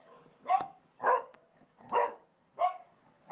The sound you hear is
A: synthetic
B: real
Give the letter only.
A